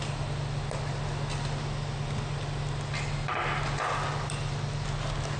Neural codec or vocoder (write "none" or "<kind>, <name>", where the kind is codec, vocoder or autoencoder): none